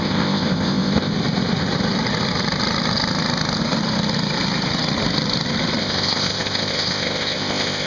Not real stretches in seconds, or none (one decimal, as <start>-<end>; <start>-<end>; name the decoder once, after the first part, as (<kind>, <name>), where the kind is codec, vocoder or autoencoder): 0.0-1.1 (codec, ZipCodec); 5.8-7.9